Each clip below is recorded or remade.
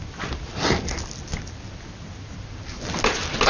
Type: recorded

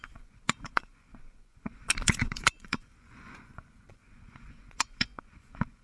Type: remade